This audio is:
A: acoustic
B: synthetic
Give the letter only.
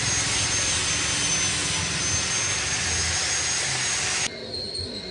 A